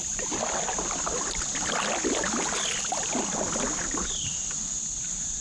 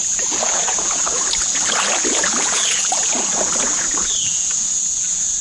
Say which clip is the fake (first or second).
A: second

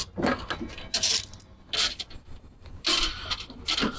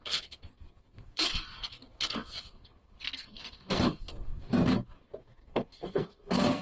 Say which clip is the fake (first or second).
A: second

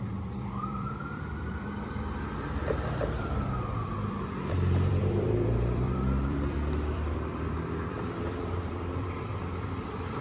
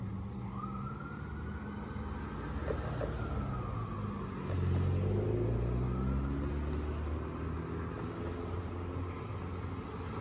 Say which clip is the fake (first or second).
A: first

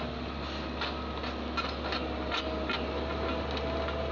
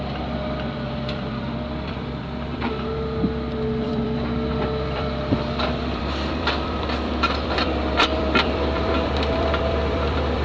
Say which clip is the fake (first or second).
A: second